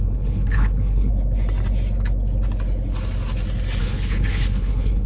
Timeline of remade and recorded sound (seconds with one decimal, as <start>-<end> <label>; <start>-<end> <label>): 0.0-1.1 remade; 1.1-3.8 recorded; 3.8-5.1 remade